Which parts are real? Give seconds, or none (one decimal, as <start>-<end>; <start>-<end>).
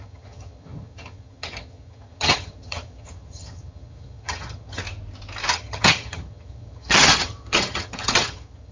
4.8-5.5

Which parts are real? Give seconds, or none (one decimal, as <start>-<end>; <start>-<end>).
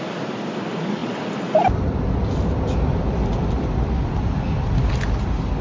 0.0-5.6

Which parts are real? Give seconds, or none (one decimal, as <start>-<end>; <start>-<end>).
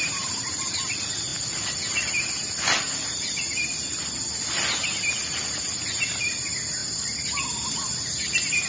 0.0-8.7